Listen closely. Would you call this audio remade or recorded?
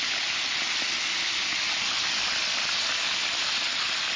recorded